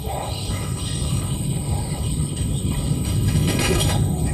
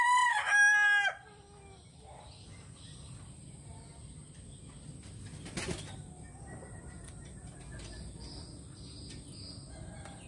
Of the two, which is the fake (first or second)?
first